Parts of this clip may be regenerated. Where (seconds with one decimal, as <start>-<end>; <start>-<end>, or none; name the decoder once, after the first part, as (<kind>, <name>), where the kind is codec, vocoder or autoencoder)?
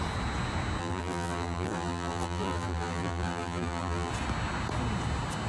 0.8-4.1 (vocoder, BigVGAN v2)